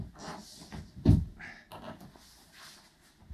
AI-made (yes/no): no